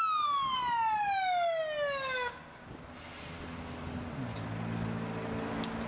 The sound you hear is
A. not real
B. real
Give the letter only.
B